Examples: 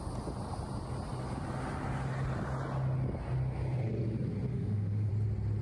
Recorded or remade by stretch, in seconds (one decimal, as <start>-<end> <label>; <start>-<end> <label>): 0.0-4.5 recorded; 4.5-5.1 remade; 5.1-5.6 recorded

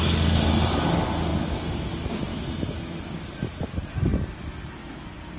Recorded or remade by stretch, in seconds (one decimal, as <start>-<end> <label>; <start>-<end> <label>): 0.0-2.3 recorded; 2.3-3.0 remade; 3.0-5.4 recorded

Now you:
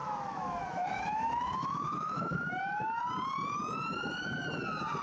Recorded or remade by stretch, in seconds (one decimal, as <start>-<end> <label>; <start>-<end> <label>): 0.0-3.0 remade; 3.0-5.0 recorded

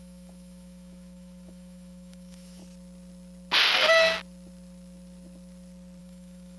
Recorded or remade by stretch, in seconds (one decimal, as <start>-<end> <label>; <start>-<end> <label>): 0.0-2.6 remade; 2.6-6.0 recorded; 6.0-6.6 remade

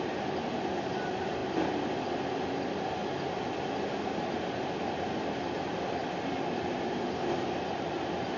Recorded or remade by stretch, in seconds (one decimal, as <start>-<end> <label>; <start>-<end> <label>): 0.0-8.4 recorded